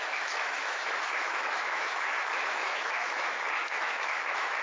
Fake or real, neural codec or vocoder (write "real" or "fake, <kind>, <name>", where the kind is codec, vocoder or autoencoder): fake, autoencoder, DAC-VAE